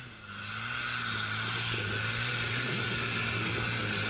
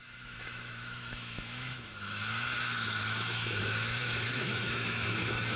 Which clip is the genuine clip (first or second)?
first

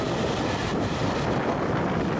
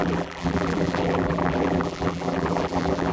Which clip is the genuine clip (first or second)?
first